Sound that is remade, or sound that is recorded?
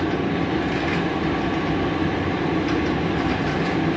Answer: recorded